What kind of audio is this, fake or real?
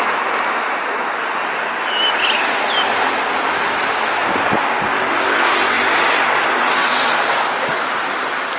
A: real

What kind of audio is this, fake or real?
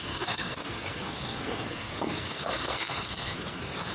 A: fake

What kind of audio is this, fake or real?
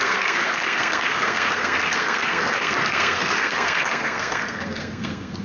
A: fake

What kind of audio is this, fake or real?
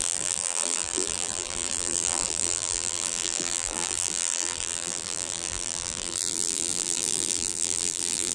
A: fake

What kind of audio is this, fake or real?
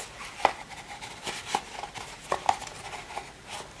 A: real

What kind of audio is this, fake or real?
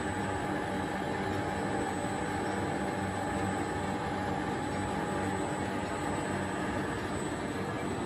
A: real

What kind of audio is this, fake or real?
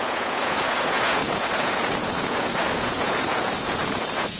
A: fake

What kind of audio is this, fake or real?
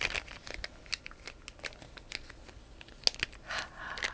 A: real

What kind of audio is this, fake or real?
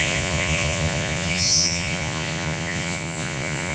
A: fake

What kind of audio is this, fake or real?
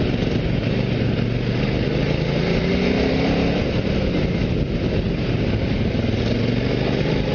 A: real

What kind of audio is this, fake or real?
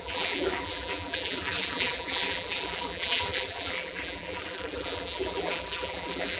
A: fake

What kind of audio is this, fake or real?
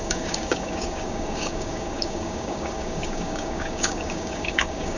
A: fake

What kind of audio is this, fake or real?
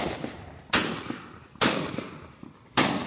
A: real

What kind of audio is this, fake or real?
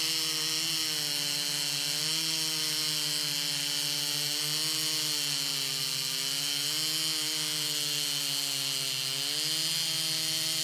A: real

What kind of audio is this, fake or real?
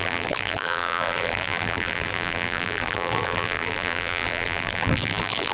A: fake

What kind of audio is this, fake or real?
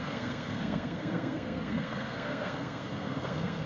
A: fake